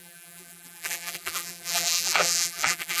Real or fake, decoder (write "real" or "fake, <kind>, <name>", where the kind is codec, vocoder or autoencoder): fake, vocoder, BigVGAN v2